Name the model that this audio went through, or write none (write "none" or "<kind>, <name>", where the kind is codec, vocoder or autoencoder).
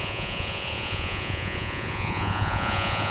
vocoder, Vocos